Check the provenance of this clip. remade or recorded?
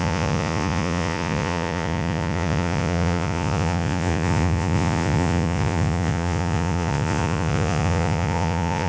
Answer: remade